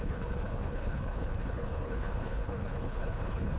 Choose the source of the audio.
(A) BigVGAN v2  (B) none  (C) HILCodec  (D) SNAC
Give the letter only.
C